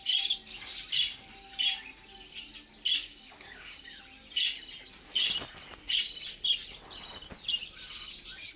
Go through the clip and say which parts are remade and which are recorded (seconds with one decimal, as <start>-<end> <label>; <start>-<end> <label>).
0.0-3.0 recorded; 3.0-4.0 remade; 4.0-8.6 recorded